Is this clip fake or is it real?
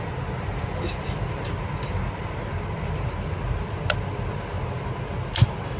real